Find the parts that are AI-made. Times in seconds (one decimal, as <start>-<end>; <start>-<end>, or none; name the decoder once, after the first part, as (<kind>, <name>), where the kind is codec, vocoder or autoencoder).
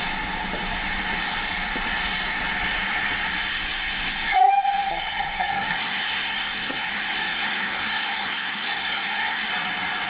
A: 3.5-4.5 (codec, SNAC); 4.9-9.5